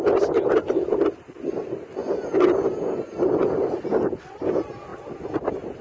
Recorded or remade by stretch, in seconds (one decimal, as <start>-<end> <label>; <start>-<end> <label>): 0.0-5.8 recorded